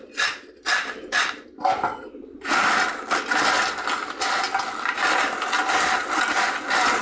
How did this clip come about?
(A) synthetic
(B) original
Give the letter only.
B